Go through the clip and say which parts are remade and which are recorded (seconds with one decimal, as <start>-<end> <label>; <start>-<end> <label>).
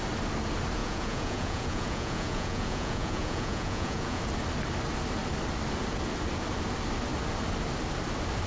0.0-0.8 recorded; 0.8-4.2 remade; 4.2-8.5 recorded